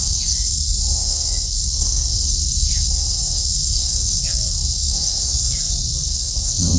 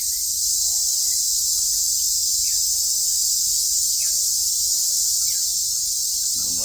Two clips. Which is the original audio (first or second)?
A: second